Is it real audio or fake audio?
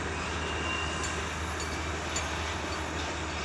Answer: real